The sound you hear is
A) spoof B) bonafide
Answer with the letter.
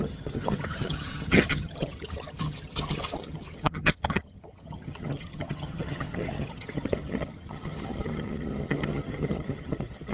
A